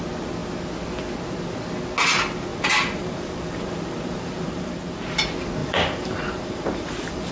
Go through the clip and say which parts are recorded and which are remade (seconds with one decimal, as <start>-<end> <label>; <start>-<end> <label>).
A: 0.0-2.5 recorded; 2.5-4.8 remade; 4.8-5.6 recorded; 5.6-7.3 remade